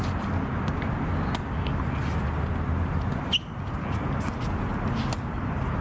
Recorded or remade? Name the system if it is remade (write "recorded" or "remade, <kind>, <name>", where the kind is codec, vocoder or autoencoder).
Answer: recorded